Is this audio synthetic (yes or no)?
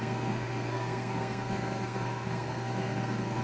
yes